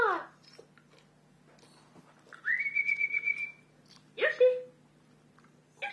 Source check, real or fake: real